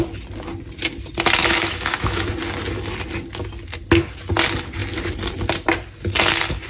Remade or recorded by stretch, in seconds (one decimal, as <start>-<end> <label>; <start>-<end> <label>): 0.0-1.4 recorded; 1.4-2.3 remade; 2.3-6.7 recorded